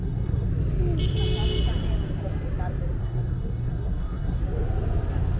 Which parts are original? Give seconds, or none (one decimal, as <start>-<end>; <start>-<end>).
0.5-3.0; 4.4-5.4